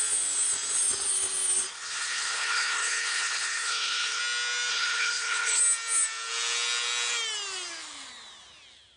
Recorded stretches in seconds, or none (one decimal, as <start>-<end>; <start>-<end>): 0.0-1.7; 4.2-4.7; 5.6-9.0